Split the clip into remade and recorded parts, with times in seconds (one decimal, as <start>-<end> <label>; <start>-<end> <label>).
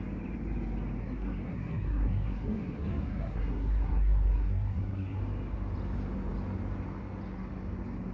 0.0-1.0 recorded; 1.0-5.2 remade; 5.2-8.1 recorded